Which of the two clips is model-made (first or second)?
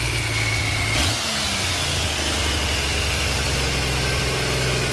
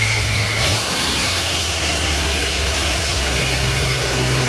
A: second